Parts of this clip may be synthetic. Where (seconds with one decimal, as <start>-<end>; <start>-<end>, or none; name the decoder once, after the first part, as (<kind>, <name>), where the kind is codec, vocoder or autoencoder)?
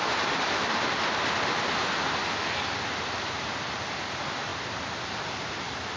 none